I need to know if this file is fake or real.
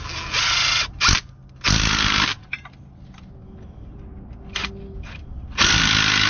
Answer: real